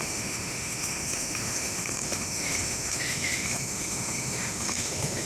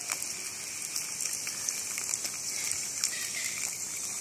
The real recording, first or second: second